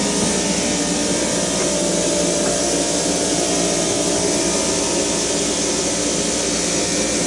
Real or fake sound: real